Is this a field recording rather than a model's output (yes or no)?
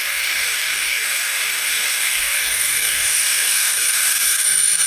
no